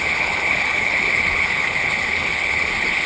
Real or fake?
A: fake